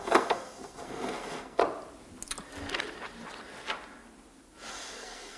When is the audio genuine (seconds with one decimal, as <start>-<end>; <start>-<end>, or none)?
1.6-4.7